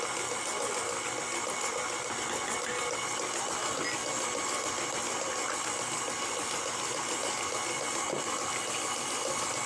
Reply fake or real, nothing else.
real